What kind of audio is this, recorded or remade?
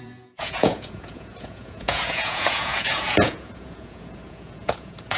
remade